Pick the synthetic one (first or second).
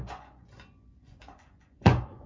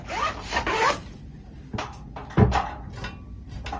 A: first